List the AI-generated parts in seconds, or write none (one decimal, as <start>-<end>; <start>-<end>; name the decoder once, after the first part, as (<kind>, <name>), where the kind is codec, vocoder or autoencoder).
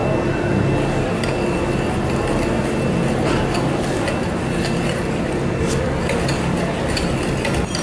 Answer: none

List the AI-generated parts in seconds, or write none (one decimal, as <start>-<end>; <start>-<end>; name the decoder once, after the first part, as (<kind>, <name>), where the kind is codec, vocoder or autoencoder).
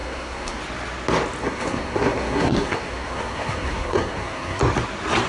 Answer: 0.0-0.6 (codec, SNAC); 1.4-4.6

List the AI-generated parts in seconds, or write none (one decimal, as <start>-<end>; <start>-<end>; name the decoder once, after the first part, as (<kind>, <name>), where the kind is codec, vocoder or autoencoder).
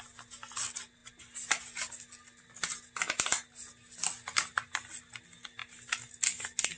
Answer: none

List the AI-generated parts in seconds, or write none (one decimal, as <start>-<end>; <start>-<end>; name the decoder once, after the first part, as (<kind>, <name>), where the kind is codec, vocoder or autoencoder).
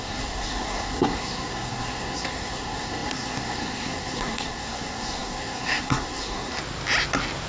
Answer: 0.0-6.6 (codec, SNAC)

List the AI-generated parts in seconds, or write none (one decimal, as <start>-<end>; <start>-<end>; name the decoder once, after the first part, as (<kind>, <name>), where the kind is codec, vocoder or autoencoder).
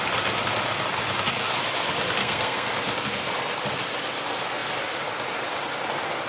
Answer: 2.2-2.7 (codec, SNAC)